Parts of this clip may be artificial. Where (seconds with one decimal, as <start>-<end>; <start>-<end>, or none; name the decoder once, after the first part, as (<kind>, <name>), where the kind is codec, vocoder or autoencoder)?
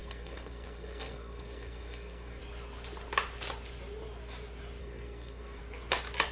0.0-2.4 (codec, SNAC); 4.8-5.6